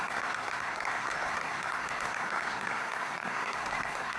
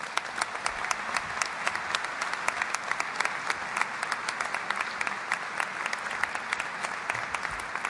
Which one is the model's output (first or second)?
first